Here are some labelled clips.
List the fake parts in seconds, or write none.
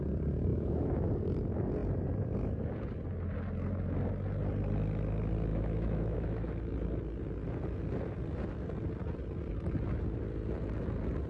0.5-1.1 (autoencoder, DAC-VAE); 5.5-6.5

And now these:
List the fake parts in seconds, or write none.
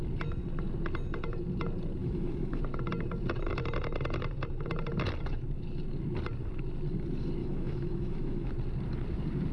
2.0-2.6 (autoencoder, DAC-VAE); 7.4-8.5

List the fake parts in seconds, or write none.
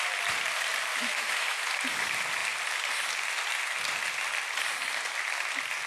0.9-1.6 (autoencoder, DAC-VAE)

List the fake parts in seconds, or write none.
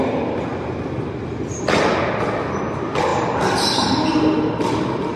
none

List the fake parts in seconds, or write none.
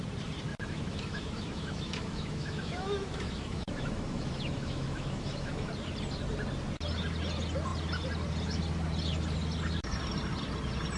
0.5-5.7 (autoencoder, DAC-VAE)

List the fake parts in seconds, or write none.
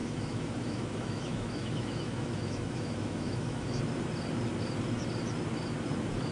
0.0-3.8 (autoencoder, DAC-VAE)